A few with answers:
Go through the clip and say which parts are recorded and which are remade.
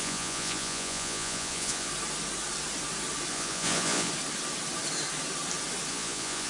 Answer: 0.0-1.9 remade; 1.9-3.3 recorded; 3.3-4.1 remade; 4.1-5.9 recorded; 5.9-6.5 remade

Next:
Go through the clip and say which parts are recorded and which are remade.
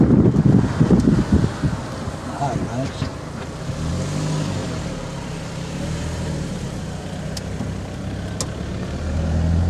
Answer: 0.0-4.6 recorded; 4.6-7.0 remade; 7.0-9.7 recorded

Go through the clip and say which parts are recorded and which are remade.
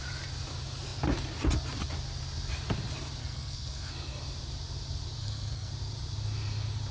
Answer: 0.0-3.2 recorded; 3.2-3.9 remade; 3.9-5.2 recorded; 5.2-5.7 remade; 5.7-6.9 recorded